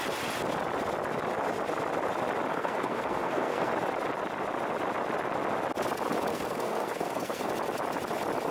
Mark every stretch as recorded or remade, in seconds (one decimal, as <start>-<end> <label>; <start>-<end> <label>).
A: 0.0-2.5 recorded; 2.5-3.7 remade; 3.7-6.3 recorded; 6.3-7.5 remade; 7.5-8.5 recorded